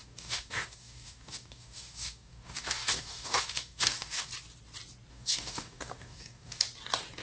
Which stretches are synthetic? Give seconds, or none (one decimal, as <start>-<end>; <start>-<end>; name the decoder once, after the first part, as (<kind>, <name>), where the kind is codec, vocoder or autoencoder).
0.0-4.3 (codec, DAC); 5.1-6.6